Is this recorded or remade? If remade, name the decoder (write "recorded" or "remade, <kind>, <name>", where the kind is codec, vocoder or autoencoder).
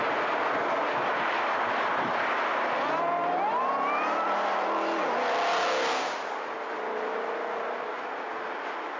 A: recorded